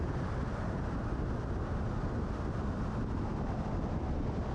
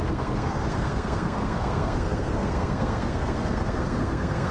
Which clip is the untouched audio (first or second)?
first